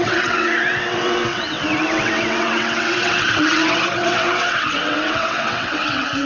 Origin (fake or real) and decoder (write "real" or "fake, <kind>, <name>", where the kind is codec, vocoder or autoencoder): fake, vocoder, WaveNeXt